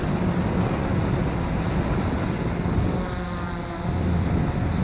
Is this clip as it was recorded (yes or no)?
yes